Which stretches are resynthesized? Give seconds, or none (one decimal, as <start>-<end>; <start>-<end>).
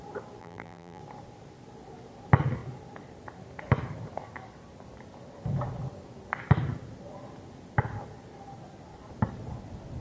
0.4-1.0